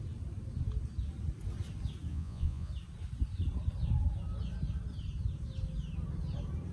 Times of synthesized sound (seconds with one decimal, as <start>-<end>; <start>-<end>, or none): 2.1-2.7